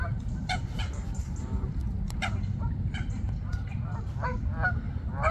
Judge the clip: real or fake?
real